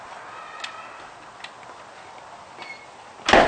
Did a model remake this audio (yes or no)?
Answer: no